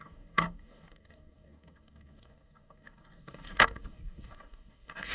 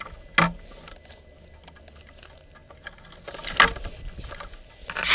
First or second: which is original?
second